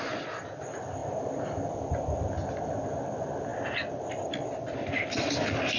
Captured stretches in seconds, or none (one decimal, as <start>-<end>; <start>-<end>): 3.5-5.8